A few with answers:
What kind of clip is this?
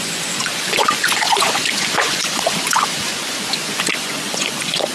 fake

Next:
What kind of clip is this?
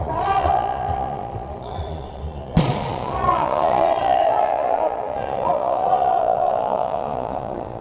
fake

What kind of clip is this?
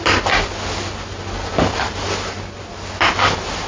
real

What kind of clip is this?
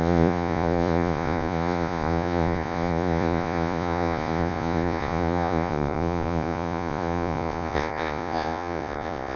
fake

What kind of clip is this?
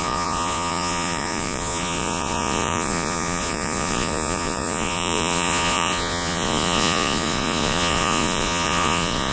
fake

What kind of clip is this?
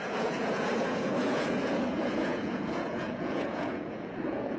fake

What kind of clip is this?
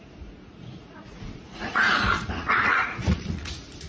fake